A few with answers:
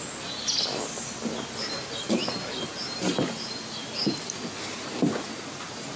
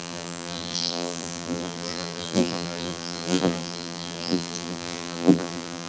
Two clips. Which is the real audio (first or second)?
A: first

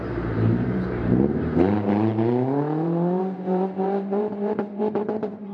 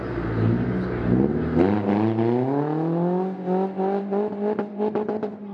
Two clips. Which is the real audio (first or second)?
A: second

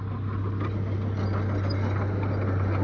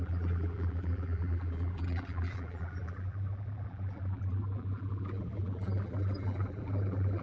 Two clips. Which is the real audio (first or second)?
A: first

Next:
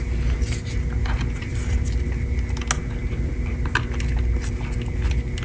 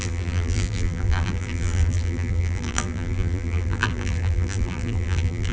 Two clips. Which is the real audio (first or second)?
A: first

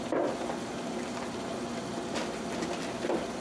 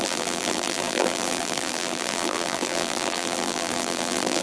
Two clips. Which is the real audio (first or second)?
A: first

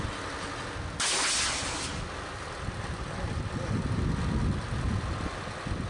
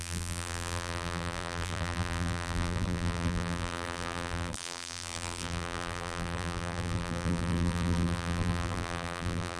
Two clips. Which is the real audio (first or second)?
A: first